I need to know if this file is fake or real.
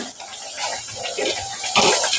real